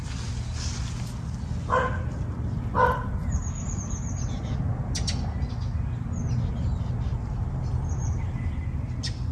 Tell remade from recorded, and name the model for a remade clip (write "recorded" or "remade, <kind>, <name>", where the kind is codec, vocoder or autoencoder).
recorded